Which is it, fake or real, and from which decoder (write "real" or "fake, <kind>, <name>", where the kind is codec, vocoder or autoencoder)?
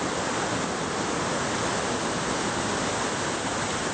real